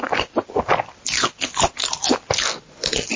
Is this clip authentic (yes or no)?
yes